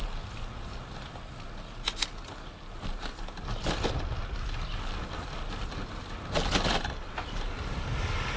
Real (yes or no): yes